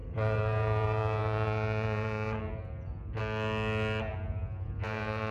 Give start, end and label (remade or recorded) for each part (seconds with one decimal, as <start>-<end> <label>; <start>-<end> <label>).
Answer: 0.0-3.2 remade; 3.2-4.1 recorded; 4.1-5.3 remade

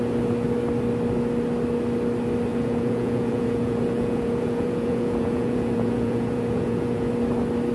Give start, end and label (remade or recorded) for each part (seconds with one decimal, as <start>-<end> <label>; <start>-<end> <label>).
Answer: 0.0-2.5 recorded; 2.5-7.1 remade; 7.1-7.7 recorded

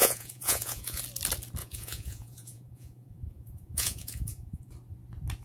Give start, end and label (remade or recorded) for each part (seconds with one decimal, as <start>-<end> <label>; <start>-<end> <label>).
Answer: 0.0-1.0 remade; 1.0-1.6 recorded; 1.6-4.7 remade; 4.7-5.4 recorded

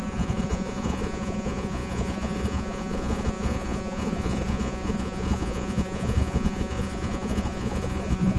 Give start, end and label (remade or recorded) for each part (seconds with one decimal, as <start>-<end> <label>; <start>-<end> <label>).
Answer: 0.0-8.4 remade

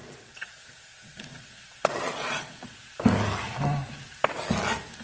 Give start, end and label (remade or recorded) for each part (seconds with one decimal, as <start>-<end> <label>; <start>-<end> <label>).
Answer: 0.0-3.0 remade; 3.0-5.0 recorded

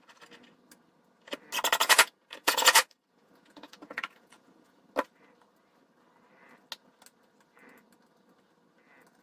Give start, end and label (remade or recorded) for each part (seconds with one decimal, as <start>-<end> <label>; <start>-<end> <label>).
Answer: 0.0-1.8 recorded; 1.8-4.8 remade; 4.8-9.2 recorded